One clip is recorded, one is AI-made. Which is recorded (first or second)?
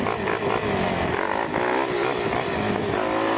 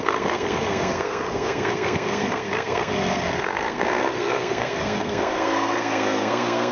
first